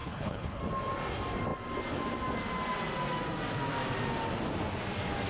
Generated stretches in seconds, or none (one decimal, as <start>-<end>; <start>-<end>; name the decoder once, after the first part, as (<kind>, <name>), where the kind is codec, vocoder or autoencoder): 0.0-0.6 (codec, HILCodec)